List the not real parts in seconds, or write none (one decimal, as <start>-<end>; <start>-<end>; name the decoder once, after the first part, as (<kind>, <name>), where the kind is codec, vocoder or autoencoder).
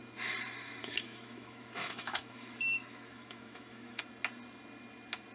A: 0.8-4.0 (autoencoder, DAC-VAE)